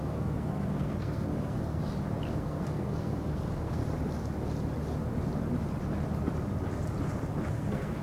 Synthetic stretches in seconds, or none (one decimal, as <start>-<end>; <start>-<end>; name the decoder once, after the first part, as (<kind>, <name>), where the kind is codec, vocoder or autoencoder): 0.0-1.8 (codec, SNAC); 2.3-3.8; 7.5-8.0